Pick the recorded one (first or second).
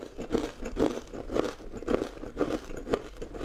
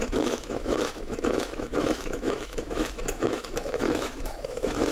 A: first